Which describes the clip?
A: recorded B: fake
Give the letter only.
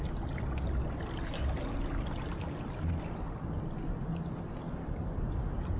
A